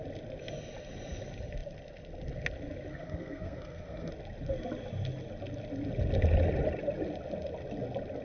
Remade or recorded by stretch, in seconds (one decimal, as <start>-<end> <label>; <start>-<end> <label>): 0.0-2.9 recorded; 2.9-4.1 remade; 4.1-8.2 recorded